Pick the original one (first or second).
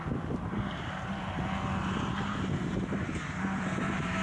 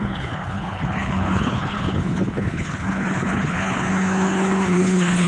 first